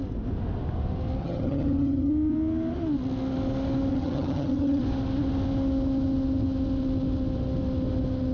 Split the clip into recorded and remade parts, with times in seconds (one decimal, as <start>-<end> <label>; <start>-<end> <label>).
0.0-1.2 recorded; 1.2-2.1 remade; 2.1-3.9 recorded; 3.9-4.8 remade; 4.8-8.3 recorded